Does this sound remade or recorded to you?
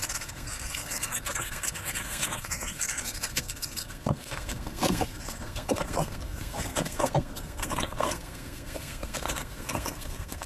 remade